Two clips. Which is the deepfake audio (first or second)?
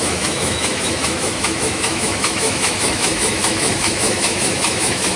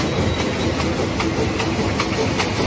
first